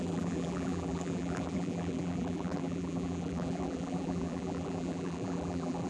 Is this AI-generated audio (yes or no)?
yes